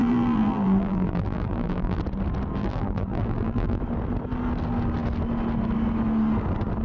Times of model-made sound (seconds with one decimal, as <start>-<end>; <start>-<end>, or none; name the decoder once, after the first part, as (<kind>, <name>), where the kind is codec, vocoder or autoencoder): 0.0-2.0 (vocoder, BigVGAN v2); 2.6-3.8